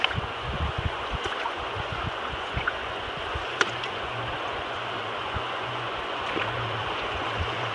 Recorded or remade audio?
remade